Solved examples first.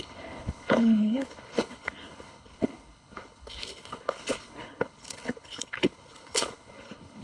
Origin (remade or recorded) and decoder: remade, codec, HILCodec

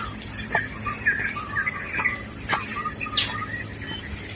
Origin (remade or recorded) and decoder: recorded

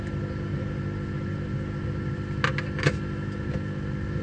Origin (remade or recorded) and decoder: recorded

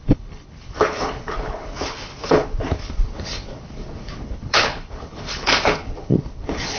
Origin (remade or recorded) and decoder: remade, codec, HILCodec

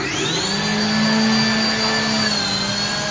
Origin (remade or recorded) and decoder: recorded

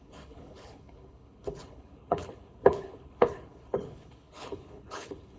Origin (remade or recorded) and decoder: remade, codec, HILCodec